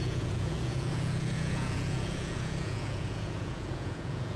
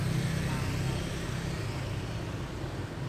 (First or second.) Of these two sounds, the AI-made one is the first